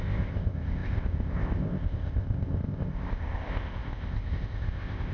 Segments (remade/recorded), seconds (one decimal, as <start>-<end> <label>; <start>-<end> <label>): 0.0-5.1 remade